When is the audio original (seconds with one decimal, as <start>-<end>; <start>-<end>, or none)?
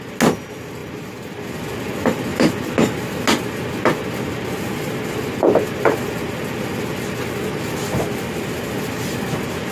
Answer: 0.0-0.8; 1.4-9.7